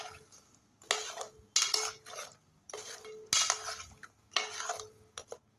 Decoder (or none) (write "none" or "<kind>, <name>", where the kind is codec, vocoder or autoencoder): none